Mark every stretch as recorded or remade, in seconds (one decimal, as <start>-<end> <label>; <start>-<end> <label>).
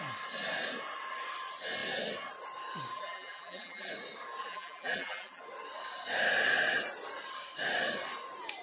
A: 0.0-2.9 recorded; 2.9-3.9 remade; 3.9-4.4 recorded; 4.4-5.4 remade; 5.4-8.6 recorded